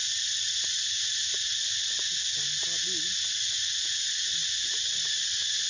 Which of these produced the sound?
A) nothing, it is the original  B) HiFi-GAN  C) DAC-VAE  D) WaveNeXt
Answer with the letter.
A